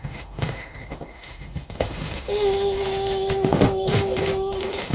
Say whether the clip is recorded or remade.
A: remade